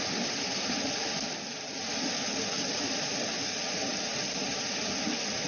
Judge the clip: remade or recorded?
recorded